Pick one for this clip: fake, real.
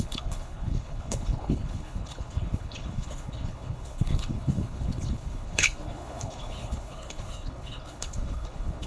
fake